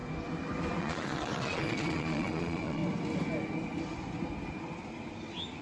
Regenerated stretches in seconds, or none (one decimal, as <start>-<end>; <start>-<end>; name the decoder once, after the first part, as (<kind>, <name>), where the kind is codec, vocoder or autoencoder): 0.8-2.8 (vocoder, Vocos)